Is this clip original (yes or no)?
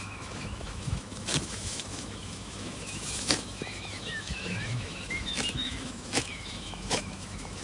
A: no